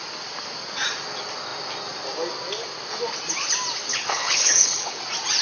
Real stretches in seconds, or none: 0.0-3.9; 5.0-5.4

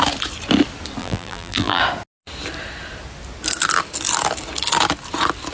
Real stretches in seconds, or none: 0.0-1.0; 1.8-5.5